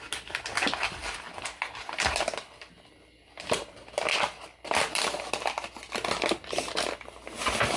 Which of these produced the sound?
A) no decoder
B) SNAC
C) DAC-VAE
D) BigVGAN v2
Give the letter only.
A